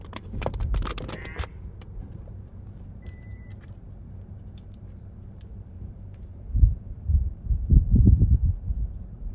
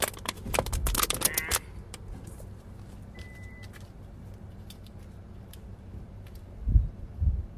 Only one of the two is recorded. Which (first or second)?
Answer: second